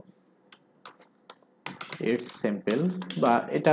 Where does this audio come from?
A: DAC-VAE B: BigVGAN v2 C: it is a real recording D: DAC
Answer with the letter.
C